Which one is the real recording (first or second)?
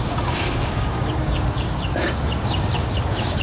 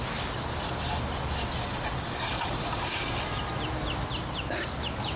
second